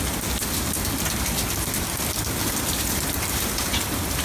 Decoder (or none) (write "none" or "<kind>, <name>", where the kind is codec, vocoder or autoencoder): none